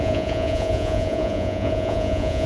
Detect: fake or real fake